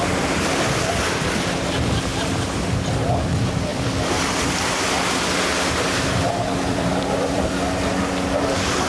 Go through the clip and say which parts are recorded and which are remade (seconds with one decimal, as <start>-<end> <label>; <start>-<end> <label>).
0.0-2.1 recorded; 2.1-2.9 remade; 2.9-3.7 recorded; 3.7-7.5 remade; 7.5-8.9 recorded